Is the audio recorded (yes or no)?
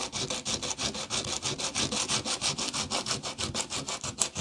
yes